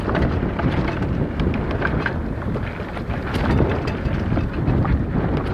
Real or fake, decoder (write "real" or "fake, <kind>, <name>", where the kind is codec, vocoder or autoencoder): real